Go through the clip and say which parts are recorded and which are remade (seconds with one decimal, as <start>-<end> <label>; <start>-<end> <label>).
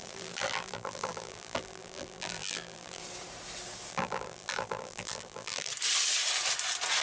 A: 0.0-3.0 remade; 3.0-3.9 recorded; 3.9-5.7 remade; 5.7-7.0 recorded